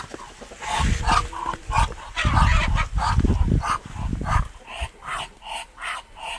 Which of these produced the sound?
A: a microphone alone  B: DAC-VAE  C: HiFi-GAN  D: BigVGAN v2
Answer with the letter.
A